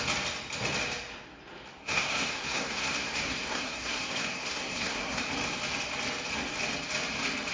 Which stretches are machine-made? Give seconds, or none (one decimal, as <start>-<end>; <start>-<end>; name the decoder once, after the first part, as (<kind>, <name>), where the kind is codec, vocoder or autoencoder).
1.8-5.2 (codec, SNAC)

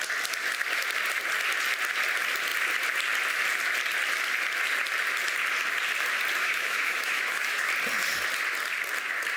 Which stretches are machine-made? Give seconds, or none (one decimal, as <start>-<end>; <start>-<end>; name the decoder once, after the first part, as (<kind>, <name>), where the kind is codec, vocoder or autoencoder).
6.4-7.7 (autoencoder, DAC-VAE)

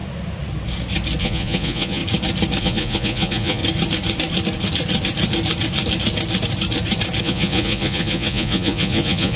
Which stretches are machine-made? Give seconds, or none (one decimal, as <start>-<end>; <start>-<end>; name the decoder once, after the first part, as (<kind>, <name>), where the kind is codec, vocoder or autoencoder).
1.2-2.0 (vocoder, Vocos); 2.6-3.6; 7.2-9.4